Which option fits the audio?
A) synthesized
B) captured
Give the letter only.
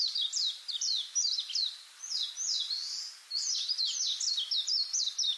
B